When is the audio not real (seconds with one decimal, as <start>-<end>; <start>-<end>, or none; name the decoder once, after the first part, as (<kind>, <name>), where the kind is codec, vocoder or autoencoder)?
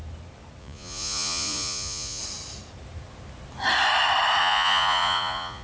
0.6-2.2 (vocoder, Vocos); 4.4-5.6